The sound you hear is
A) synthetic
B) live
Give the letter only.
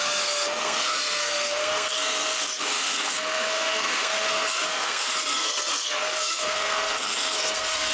A